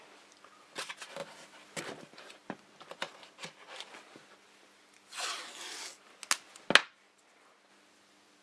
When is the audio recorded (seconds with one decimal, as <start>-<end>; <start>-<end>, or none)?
0.0-8.4